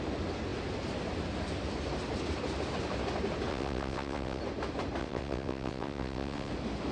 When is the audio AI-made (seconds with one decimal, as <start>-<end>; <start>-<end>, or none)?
3.5-4.4; 5.0-6.5